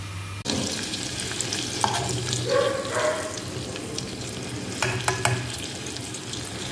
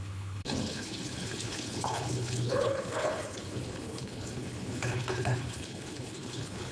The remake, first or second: second